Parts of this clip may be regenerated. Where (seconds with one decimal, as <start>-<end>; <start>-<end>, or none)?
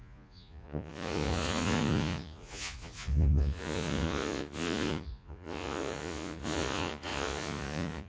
0.0-8.1